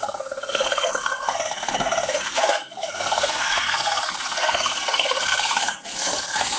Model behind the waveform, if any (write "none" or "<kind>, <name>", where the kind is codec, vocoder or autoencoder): codec, SNAC